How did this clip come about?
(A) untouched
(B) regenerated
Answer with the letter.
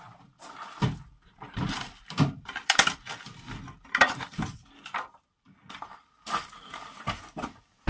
B